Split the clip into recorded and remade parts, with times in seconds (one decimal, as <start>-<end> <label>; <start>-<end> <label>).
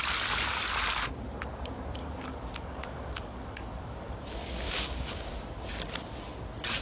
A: 0.0-2.0 recorded; 2.0-5.7 remade; 5.7-6.8 recorded